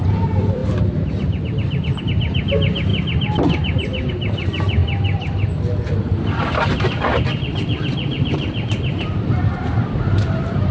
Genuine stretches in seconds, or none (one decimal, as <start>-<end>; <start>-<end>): 0.6-2.0; 2.9-4.1; 4.8-6.4